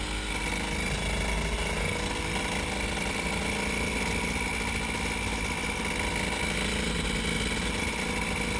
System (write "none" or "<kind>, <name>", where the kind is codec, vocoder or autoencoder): none